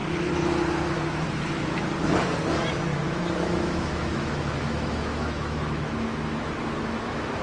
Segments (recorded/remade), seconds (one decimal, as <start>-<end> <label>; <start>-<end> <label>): 0.0-2.9 recorded; 2.9-7.4 remade

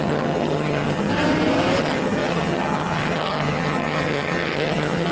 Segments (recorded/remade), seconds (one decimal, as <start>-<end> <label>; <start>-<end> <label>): 0.0-1.1 remade; 1.1-1.8 recorded; 1.8-5.1 remade

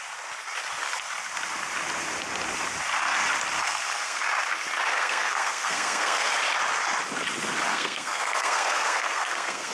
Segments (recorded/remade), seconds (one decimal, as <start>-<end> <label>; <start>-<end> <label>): 0.0-3.6 recorded; 3.6-4.2 remade; 4.2-4.9 recorded; 4.9-6.3 remade; 6.3-7.7 recorded; 7.7-9.7 remade

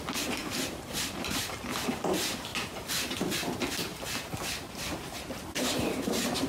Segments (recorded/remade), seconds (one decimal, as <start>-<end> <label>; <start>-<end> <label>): 0.0-0.4 recorded; 0.4-1.3 remade; 1.3-6.5 recorded

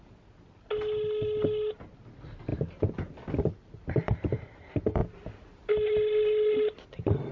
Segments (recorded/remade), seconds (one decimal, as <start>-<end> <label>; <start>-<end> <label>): 0.0-7.3 recorded

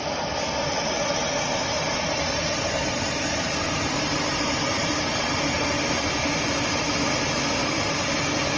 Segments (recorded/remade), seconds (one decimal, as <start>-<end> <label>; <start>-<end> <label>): 0.0-0.7 recorded; 0.7-5.8 remade; 5.8-7.6 recorded; 7.6-8.1 remade; 8.1-8.6 recorded

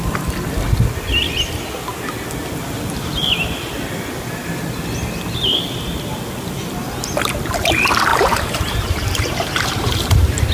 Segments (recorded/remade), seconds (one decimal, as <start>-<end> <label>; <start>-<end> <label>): 0.0-8.1 recorded; 8.1-10.5 remade